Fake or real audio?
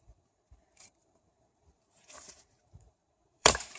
fake